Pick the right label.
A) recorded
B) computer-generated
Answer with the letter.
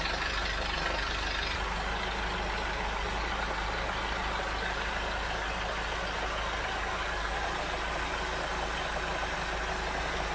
A